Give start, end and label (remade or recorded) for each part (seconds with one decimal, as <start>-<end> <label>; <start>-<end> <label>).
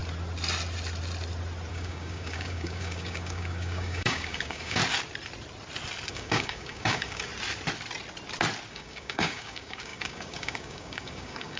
0.0-1.7 recorded; 1.7-4.8 remade; 4.8-6.1 recorded; 6.1-7.3 remade; 7.3-8.7 recorded; 8.7-11.6 remade